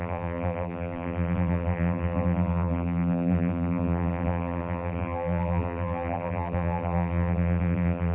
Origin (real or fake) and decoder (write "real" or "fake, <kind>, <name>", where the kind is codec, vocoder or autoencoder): fake, vocoder, BigVGAN v2